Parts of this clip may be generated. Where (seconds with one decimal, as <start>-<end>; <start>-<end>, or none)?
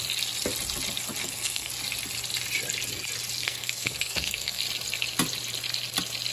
1.2-1.7; 3.4-4.6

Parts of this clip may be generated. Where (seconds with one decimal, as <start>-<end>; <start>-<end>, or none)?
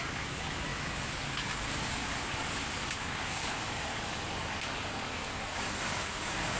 0.0-6.6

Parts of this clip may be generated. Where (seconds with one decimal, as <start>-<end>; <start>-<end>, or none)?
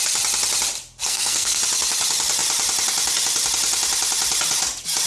1.0-1.6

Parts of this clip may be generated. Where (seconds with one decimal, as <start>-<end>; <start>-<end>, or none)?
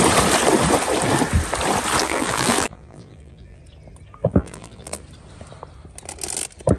2.0-3.6; 4.2-5.0